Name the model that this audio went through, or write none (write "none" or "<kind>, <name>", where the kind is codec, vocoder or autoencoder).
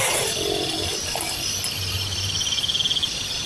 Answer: none